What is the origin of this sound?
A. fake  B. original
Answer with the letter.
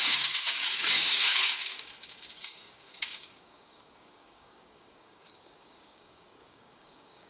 A